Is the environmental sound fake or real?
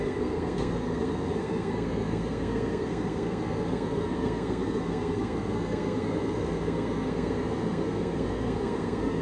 fake